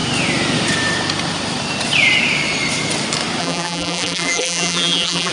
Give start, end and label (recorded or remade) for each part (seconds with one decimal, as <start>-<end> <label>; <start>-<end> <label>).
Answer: 0.0-3.4 recorded; 3.4-5.3 remade